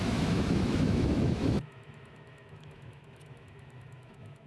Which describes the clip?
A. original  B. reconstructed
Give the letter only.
B